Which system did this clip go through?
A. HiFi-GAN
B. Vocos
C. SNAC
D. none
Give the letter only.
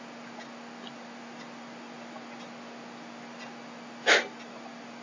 D